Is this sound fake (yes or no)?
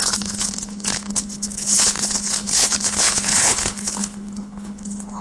yes